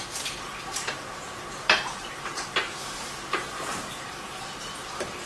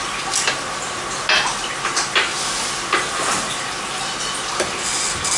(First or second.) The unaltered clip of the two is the second